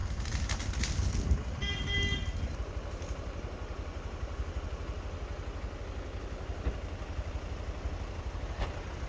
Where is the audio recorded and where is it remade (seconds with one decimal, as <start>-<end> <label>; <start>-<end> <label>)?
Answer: 0.0-9.1 recorded